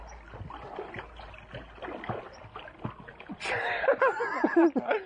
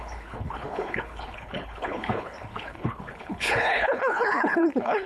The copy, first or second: second